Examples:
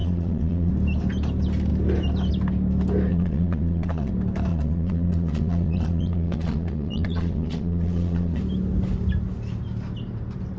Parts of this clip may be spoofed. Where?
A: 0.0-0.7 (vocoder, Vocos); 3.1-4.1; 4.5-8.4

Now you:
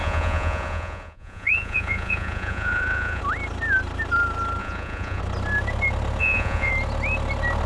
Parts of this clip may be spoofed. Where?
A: 0.0-3.2 (vocoder, Vocos); 4.6-5.2; 6.2-6.7

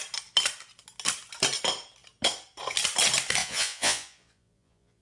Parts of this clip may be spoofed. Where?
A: 3.4-5.0 (vocoder, Vocos)

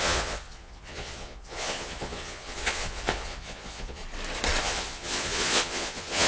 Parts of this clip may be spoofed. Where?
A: 0.0-4.0 (vocoder, Vocos); 4.6-6.3

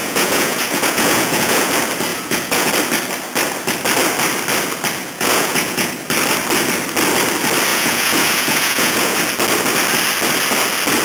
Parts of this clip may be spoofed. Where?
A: 0.0-1.7 (vocoder, Vocos); 2.1-2.7; 5.0-5.9; 7.7-9.2